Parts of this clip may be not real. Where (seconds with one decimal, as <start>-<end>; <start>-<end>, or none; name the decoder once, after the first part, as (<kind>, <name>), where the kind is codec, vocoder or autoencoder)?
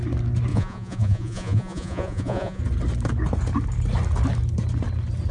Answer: 0.5-2.6 (vocoder, Vocos)